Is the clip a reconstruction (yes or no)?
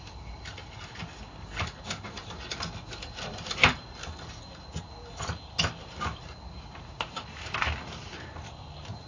no